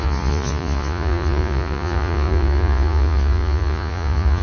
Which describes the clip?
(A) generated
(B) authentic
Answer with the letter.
A